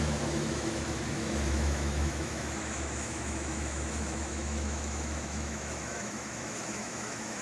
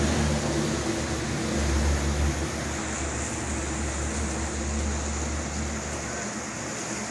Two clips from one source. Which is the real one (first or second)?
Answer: second